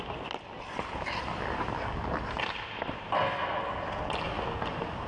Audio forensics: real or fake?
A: real